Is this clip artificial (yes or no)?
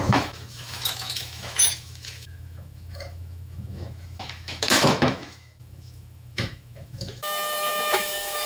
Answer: yes